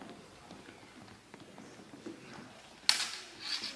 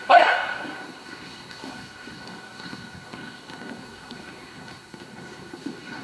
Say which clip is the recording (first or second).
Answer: first